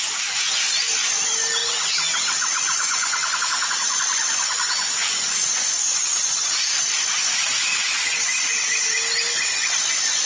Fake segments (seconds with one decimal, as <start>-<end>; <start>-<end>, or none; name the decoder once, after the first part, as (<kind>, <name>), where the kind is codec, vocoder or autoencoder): 1.6-6.5 (vocoder, Vocos); 7.7-8.5